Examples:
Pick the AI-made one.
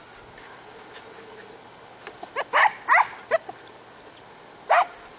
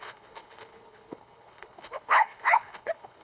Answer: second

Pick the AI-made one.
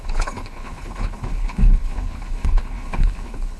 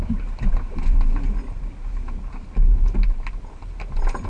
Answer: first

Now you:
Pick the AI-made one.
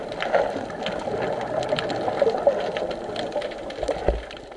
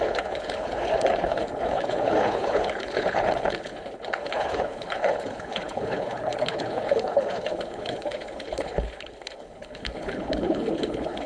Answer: second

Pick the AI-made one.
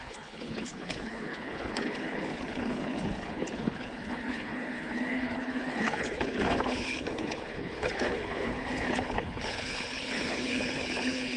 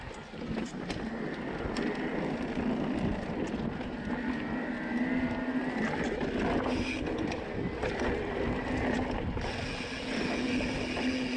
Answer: first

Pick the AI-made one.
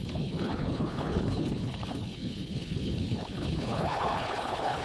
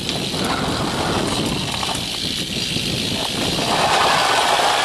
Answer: first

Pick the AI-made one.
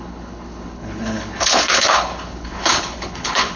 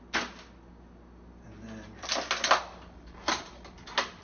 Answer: first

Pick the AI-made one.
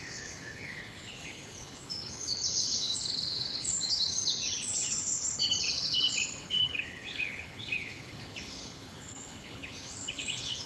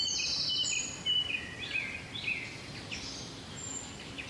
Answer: first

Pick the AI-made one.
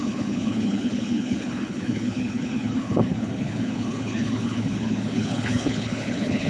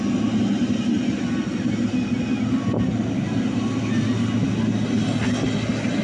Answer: first